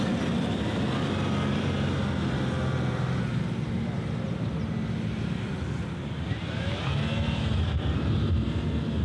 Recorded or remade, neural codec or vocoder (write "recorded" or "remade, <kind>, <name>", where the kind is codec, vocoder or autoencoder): recorded